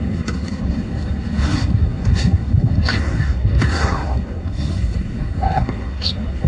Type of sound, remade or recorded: remade